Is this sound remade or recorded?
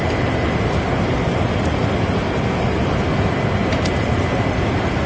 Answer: recorded